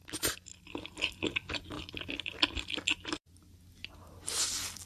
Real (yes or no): yes